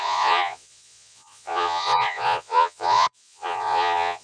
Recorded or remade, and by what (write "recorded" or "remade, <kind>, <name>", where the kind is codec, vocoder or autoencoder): remade, vocoder, Vocos